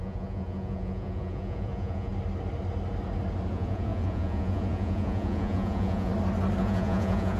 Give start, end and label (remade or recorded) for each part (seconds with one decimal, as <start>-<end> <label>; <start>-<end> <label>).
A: 0.0-2.1 remade; 2.1-3.5 recorded; 3.5-6.1 remade; 6.1-6.6 recorded; 6.6-7.4 remade